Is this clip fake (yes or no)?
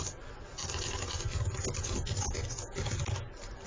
no